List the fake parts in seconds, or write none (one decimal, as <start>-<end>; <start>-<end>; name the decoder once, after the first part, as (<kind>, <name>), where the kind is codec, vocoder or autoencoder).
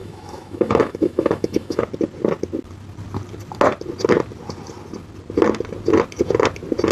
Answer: 0.0-1.8 (autoencoder, DAC-VAE)